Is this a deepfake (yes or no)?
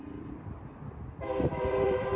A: yes